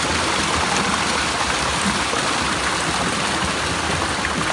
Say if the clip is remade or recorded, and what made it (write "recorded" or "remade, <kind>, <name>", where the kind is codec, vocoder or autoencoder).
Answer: recorded